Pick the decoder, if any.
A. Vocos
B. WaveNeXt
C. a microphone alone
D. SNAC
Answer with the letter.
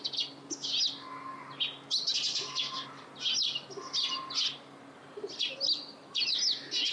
C